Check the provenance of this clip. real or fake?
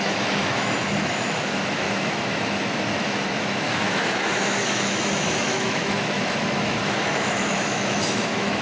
fake